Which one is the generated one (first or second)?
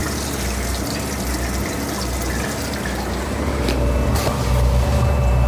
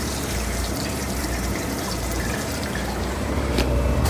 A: second